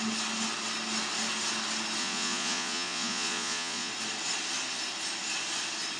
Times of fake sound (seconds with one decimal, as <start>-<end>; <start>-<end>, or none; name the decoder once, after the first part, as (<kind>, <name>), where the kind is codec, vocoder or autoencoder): 2.0-3.9 (vocoder, Vocos)